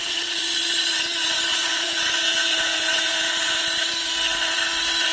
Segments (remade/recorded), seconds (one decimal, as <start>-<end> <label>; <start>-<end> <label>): 0.0-1.5 recorded; 1.5-3.5 remade; 3.5-5.1 recorded